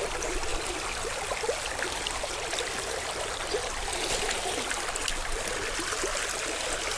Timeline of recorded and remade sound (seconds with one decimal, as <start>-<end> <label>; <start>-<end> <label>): 0.0-7.0 recorded